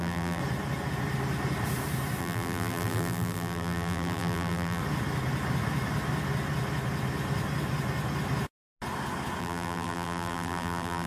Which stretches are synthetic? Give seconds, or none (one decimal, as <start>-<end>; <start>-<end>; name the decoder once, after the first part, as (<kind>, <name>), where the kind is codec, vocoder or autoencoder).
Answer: 0.0-0.4 (vocoder, BigVGAN v2); 2.2-4.8; 9.4-11.1